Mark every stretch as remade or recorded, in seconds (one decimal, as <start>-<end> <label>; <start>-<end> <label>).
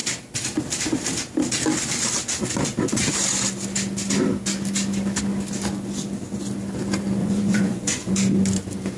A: 0.0-7.2 recorded; 7.2-8.1 remade; 8.1-9.0 recorded